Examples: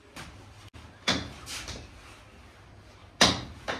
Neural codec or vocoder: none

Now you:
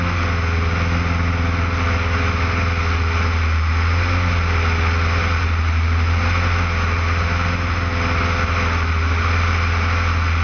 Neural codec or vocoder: none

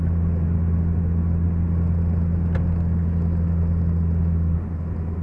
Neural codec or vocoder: none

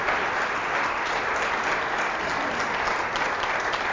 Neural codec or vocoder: none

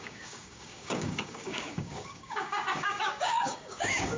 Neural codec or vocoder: codec, DAC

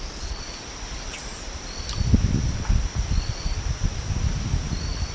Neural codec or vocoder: none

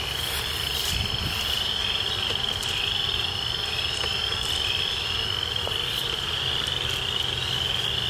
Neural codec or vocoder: none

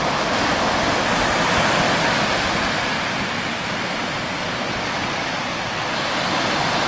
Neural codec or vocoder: none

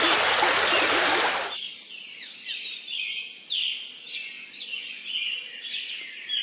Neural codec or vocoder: none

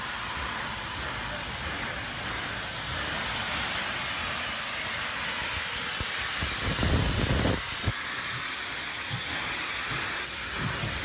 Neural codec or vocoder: none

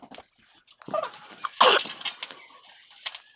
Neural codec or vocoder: none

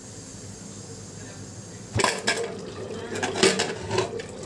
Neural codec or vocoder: none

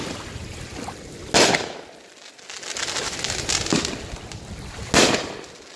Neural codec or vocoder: none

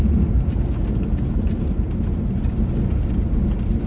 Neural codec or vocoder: none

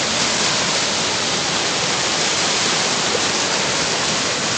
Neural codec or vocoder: none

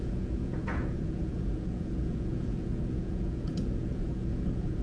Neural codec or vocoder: vocoder, Vocos